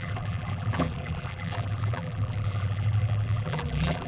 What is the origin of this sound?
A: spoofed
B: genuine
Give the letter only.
A